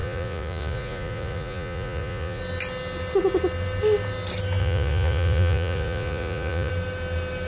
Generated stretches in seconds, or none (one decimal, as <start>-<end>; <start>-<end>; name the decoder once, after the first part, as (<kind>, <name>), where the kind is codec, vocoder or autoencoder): 0.0-2.4 (vocoder, Vocos); 4.6-6.7